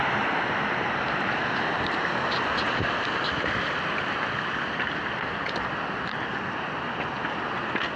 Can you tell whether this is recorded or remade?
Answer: recorded